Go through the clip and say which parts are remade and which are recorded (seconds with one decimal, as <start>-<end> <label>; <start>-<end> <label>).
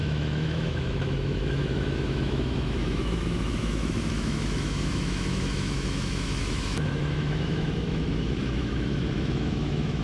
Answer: 0.0-10.0 remade